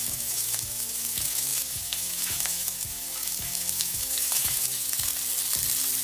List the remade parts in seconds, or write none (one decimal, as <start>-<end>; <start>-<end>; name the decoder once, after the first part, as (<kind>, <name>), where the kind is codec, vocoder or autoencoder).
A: 0.0-5.1 (autoencoder, DAC-VAE)